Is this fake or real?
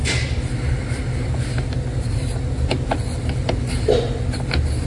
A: real